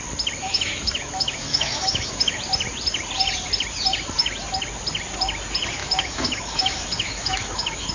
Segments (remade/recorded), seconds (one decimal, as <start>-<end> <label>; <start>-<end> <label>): 0.0-0.4 recorded; 0.4-2.4 remade; 2.4-5.8 recorded; 5.8-7.9 remade